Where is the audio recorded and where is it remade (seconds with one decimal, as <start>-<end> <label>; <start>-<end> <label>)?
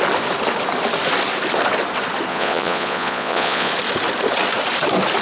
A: 0.0-2.3 recorded; 2.3-3.7 remade; 3.7-5.2 recorded